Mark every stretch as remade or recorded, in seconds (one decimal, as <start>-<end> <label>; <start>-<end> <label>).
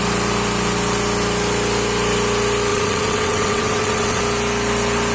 0.0-2.7 recorded; 2.7-4.2 remade; 4.2-5.1 recorded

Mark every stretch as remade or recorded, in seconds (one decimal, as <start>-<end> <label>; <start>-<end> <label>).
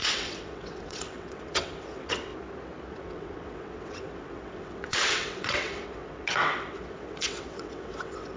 0.0-2.3 remade; 2.3-2.9 recorded; 2.9-8.4 remade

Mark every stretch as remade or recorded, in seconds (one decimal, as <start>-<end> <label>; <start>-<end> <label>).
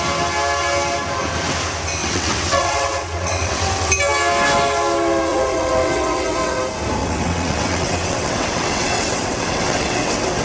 0.0-2.0 recorded; 2.0-3.9 remade; 3.9-5.3 recorded; 5.3-6.6 remade; 6.6-7.0 recorded; 7.0-10.4 remade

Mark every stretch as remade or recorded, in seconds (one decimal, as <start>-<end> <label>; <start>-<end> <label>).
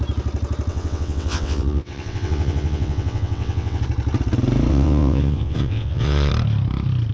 0.0-0.7 recorded; 0.7-3.8 remade; 3.8-4.7 recorded; 4.7-6.3 remade; 6.3-7.1 recorded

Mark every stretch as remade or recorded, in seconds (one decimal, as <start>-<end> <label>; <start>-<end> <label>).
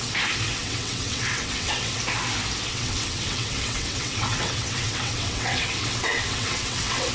0.0-0.6 recorded; 0.6-2.0 remade; 2.0-2.7 recorded; 2.7-7.1 remade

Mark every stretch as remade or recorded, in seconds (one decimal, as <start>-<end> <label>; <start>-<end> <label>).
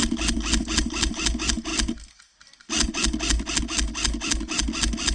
0.0-5.1 recorded